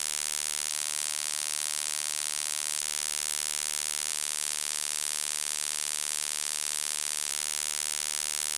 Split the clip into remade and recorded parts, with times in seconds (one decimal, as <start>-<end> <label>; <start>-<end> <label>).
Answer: 0.0-0.7 recorded; 0.7-2.8 remade; 2.8-4.1 recorded; 4.1-7.3 remade; 7.3-8.6 recorded